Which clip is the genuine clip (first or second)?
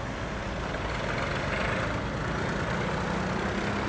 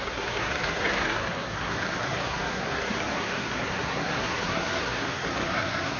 first